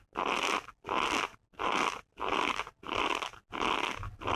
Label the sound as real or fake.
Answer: real